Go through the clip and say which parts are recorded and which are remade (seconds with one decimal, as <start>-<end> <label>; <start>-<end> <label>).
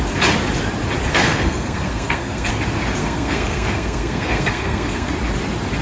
0.0-1.1 recorded; 1.1-2.5 remade; 2.5-3.0 recorded; 3.0-5.1 remade; 5.1-5.8 recorded